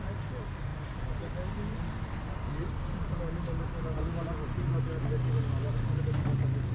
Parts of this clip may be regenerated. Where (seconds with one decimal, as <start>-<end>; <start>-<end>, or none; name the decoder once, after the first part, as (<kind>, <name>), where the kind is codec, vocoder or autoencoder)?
none